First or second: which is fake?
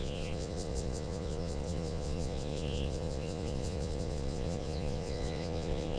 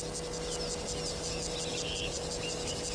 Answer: first